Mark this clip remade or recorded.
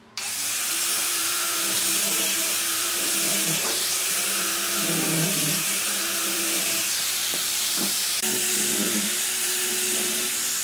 remade